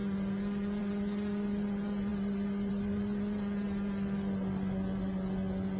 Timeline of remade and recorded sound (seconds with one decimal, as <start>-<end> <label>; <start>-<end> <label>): 0.0-5.8 recorded